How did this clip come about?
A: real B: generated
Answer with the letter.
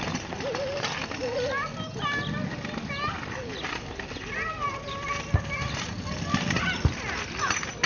A